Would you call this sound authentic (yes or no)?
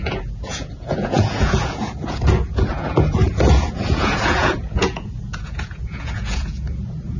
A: no